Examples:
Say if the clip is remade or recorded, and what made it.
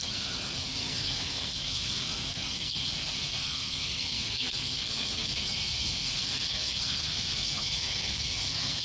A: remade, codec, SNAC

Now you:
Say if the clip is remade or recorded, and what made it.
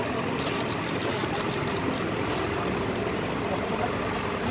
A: recorded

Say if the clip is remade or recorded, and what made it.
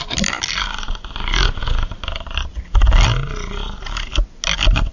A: recorded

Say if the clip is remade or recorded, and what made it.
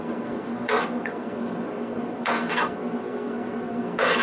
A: remade, codec, SNAC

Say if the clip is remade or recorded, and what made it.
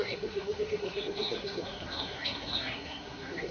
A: remade, codec, SNAC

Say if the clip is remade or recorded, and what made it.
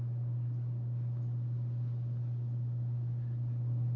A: recorded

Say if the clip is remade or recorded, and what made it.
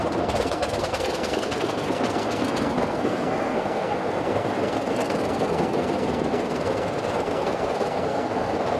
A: remade, codec, SNAC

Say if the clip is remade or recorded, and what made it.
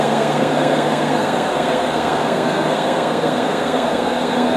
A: remade, codec, SNAC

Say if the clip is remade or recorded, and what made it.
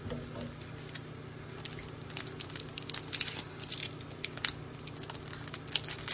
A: recorded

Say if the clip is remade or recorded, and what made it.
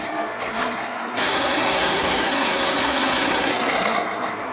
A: remade, codec, SNAC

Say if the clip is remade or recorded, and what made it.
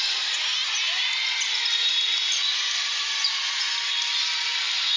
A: recorded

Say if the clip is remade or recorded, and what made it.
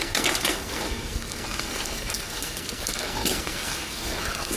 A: remade, codec, SNAC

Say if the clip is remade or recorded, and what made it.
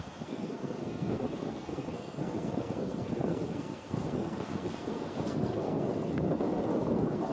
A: remade, codec, SNAC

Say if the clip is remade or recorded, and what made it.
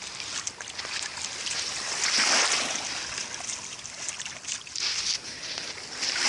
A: recorded